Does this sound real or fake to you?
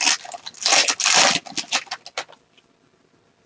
real